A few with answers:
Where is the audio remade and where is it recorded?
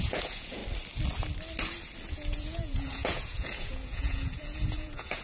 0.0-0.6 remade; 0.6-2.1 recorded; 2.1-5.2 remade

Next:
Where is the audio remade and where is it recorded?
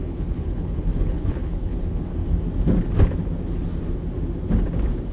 0.0-2.1 remade; 2.1-5.1 recorded